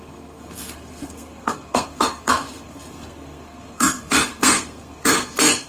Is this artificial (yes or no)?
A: yes